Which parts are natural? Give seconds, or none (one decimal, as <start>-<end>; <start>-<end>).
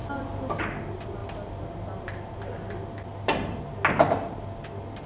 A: 0.0-5.1